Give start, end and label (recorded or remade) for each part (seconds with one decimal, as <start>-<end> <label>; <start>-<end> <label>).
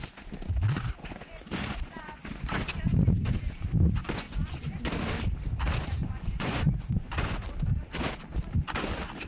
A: 0.0-1.0 recorded; 1.0-4.8 remade; 4.8-6.0 recorded; 6.0-7.4 remade; 7.4-9.3 recorded